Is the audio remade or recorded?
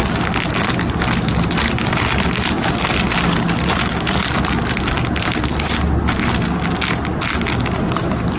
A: recorded